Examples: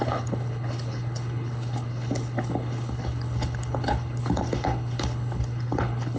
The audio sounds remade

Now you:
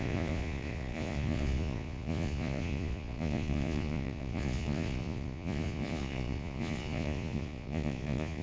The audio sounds remade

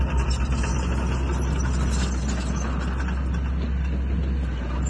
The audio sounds recorded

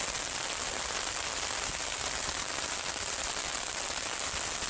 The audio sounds recorded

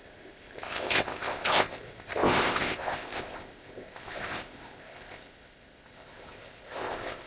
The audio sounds remade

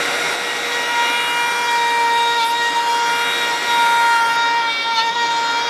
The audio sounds recorded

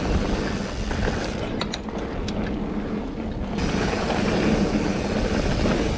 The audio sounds recorded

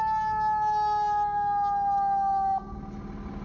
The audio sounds recorded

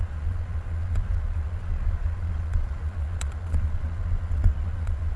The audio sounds remade